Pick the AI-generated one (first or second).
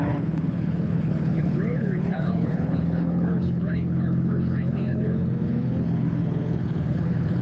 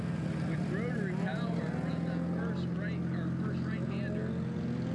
first